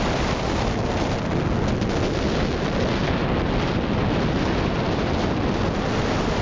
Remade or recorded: recorded